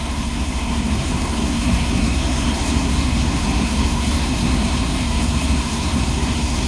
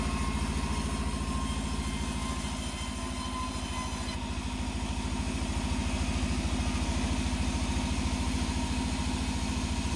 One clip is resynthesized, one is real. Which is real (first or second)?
second